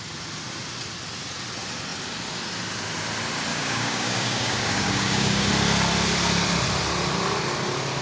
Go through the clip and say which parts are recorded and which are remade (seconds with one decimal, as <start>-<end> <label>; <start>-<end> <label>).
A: 0.0-3.5 recorded; 3.5-5.5 remade; 5.5-8.0 recorded